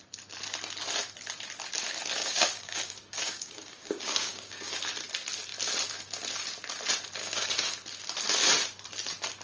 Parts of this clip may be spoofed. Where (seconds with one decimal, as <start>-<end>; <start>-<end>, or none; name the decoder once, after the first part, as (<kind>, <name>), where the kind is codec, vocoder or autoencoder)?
2.2-4.8 (codec, DAC); 7.2-7.7